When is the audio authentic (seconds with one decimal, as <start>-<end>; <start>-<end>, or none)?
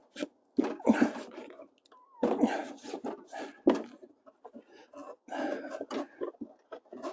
0.0-7.1